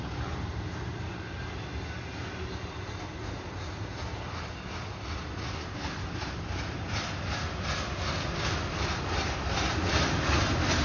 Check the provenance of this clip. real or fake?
real